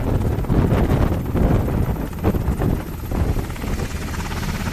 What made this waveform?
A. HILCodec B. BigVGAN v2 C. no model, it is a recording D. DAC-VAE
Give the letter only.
C